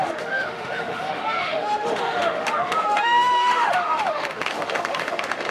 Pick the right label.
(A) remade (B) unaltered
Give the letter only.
A